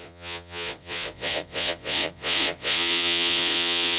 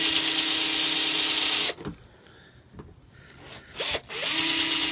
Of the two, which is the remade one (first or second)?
first